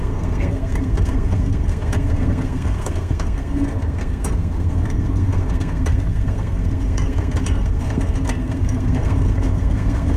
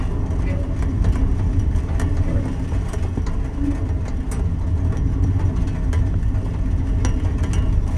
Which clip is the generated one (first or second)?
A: first